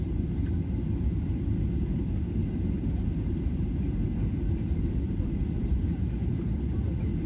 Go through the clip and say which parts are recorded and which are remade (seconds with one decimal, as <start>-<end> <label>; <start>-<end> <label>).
0.0-2.4 recorded; 2.4-6.8 remade; 6.8-7.3 recorded